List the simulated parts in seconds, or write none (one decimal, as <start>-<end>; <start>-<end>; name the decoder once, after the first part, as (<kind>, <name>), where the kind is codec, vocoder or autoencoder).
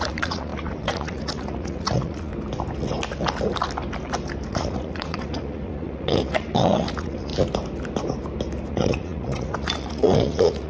0.0-2.3 (vocoder, Vocos); 4.5-7.3; 8.7-10.7